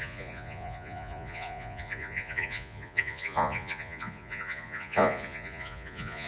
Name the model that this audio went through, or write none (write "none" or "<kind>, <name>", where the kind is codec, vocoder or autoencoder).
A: vocoder, Vocos